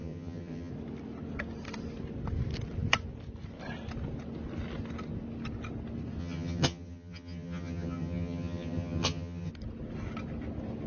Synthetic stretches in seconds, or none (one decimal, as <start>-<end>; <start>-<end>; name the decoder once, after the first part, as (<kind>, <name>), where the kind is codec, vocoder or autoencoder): 0.0-0.7 (vocoder, HiFi-GAN); 6.2-9.5